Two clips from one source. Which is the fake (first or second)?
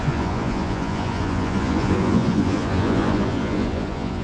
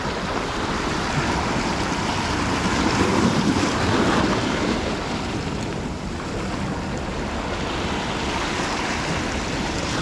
first